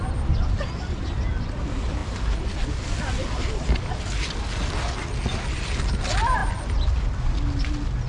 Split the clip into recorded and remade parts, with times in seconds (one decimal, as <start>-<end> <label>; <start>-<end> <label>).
0.0-8.1 recorded